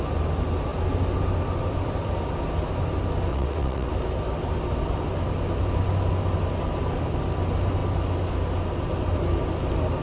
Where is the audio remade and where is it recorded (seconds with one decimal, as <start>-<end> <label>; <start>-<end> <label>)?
0.0-3.3 recorded; 3.3-3.9 remade; 3.9-10.0 recorded